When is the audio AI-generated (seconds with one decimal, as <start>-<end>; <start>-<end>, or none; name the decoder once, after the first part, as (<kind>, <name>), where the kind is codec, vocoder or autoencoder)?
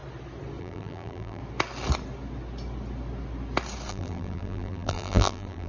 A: 0.6-1.4 (vocoder, BigVGAN v2); 3.9-5.7